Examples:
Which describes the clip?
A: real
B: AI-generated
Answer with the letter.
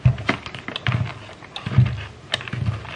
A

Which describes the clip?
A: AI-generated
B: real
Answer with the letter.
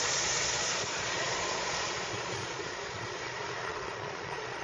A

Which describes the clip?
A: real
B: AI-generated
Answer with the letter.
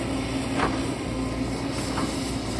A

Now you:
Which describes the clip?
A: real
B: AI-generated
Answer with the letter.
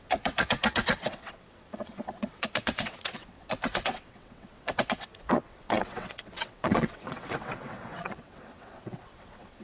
B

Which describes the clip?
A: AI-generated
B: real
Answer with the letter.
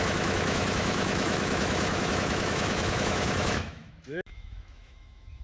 A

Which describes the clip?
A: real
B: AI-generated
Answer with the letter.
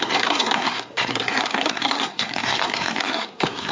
B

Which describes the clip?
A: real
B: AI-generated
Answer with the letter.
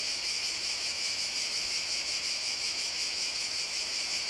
B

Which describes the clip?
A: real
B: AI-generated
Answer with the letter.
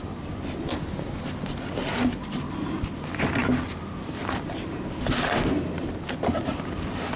A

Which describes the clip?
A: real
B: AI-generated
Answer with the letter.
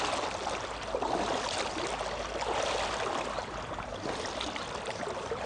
A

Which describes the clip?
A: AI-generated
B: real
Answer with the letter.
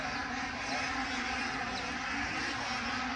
B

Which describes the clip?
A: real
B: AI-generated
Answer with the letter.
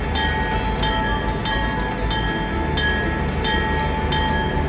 A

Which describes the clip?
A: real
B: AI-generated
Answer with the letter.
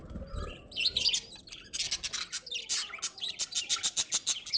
A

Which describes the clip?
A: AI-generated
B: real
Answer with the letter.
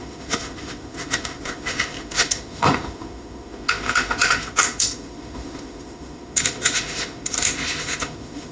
A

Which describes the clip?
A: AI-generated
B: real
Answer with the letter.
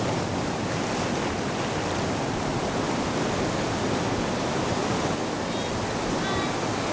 B